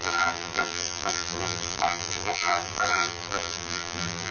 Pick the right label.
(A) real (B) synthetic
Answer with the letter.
B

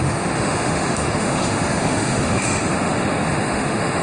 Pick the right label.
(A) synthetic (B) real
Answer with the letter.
A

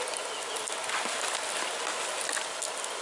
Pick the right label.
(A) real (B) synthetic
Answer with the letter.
A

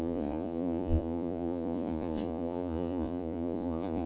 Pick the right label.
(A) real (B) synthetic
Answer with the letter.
B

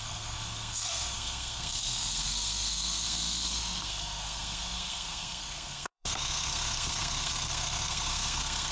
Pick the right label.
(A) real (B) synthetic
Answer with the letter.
B